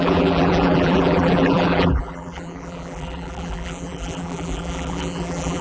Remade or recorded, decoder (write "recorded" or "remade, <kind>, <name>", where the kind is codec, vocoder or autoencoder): remade, vocoder, BigVGAN v2